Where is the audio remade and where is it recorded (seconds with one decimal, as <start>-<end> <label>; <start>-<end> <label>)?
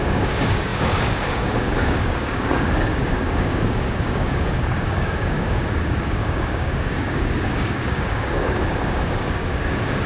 0.0-10.1 remade